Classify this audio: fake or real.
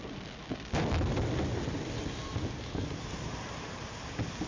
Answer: real